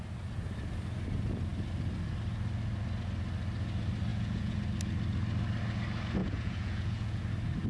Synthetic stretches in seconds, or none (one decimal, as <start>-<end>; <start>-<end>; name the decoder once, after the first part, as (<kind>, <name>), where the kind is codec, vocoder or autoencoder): 4.1-4.6 (vocoder, Vocos); 6.2-7.2